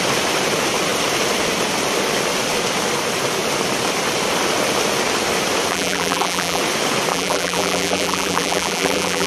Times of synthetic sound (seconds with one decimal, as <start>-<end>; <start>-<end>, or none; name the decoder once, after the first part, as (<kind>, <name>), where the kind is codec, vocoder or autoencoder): 5.7-6.6 (vocoder, BigVGAN v2); 7.1-9.3